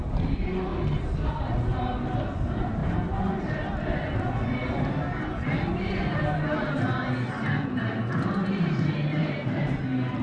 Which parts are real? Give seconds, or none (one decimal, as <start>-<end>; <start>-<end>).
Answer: 0.0-9.2